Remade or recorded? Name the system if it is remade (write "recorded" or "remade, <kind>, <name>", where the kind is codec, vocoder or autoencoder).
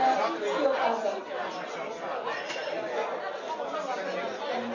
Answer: recorded